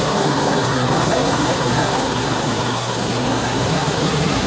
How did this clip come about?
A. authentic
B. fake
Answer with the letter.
B